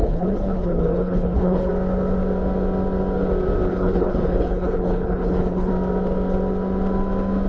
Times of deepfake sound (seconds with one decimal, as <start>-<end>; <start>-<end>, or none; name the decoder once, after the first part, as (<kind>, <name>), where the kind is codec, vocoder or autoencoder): 0.0-1.7 (codec, HILCodec); 3.7-5.7